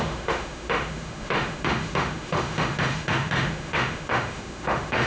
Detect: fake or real fake